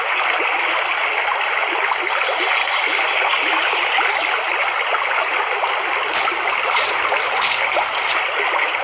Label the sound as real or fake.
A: real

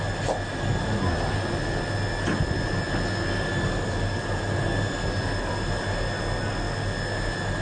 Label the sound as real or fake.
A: real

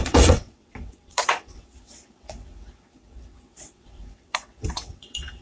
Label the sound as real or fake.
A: fake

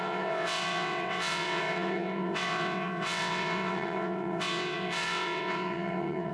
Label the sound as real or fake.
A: fake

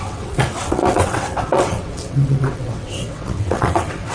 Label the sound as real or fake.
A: fake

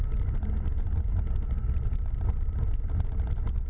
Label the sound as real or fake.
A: real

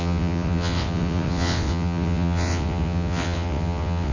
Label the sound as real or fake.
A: fake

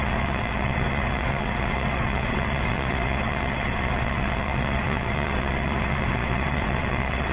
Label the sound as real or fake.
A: fake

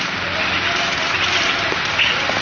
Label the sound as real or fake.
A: real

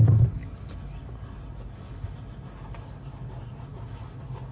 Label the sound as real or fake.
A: real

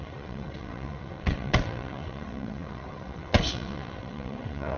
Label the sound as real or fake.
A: fake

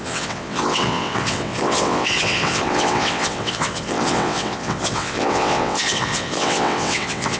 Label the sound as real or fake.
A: fake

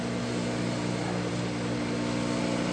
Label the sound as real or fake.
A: real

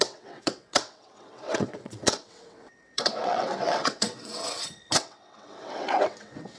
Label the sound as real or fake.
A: fake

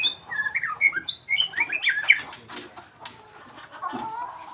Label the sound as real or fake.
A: real